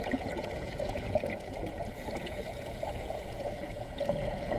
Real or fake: fake